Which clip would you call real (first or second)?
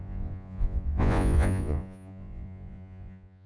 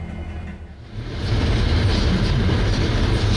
second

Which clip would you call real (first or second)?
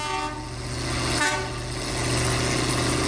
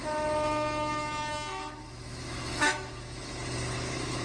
first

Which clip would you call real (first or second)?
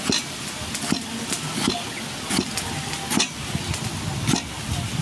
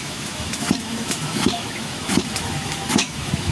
first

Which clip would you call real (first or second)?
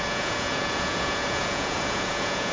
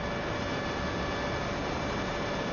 second